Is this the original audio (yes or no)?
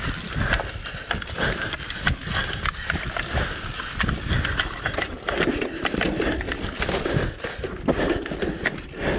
yes